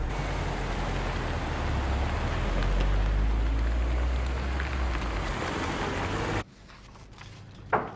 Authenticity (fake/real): real